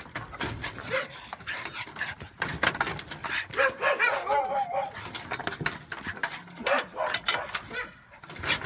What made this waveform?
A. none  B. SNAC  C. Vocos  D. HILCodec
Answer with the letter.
A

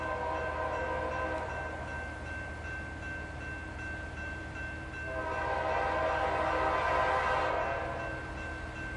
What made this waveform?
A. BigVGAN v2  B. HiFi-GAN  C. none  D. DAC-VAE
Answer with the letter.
C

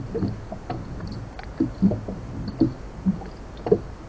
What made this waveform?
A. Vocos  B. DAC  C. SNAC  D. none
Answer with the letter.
D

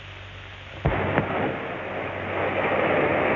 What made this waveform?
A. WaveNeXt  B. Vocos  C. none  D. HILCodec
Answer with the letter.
C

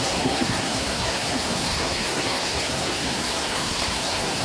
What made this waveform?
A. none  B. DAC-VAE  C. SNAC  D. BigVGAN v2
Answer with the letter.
C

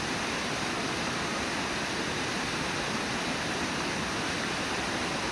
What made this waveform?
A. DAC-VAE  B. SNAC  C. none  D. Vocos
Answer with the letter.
C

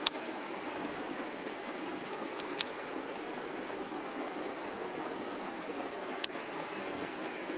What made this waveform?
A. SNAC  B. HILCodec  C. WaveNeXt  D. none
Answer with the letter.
A